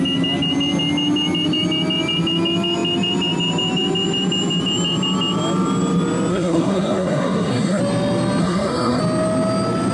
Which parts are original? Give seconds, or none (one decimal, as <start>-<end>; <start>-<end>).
0.0-6.3; 7.8-8.4; 9.0-9.9